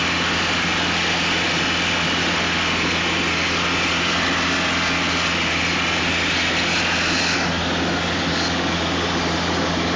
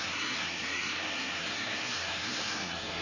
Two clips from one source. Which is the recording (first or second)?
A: first